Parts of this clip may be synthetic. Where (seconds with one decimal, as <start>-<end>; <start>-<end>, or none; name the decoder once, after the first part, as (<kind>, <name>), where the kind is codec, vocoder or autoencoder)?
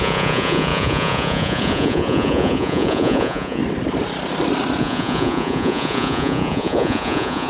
0.0-3.6 (vocoder, Vocos); 4.8-7.5